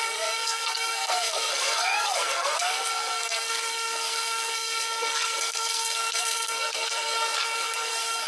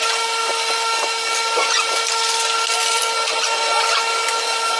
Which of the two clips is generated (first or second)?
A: first